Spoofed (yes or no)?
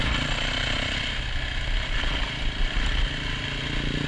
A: no